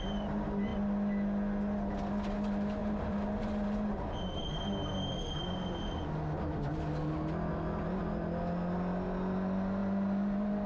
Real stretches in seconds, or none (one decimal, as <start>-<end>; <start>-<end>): 0.0-2.8; 4.5-9.8